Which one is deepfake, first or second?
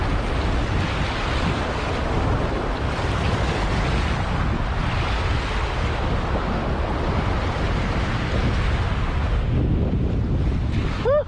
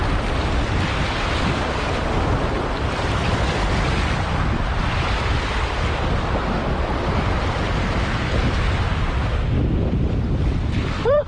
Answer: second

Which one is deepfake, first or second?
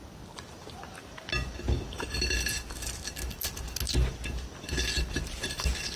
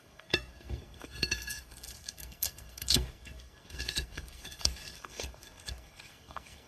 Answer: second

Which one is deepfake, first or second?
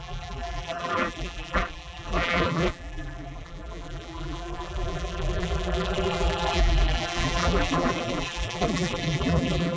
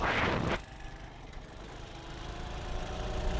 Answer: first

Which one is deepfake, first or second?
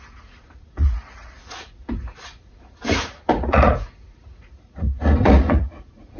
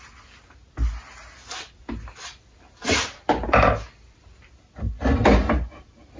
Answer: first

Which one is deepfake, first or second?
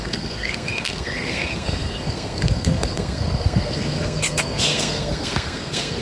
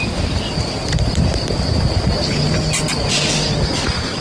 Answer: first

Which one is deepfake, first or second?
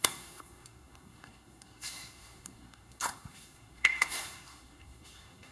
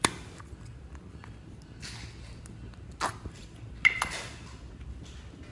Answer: first